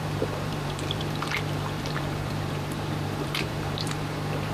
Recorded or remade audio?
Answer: remade